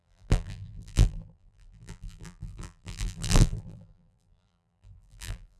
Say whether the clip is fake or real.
fake